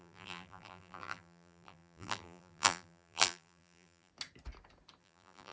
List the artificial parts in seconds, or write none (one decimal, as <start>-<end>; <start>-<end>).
0.0-4.1; 5.0-5.5